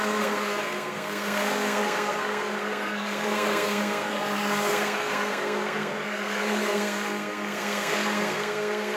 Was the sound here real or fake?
fake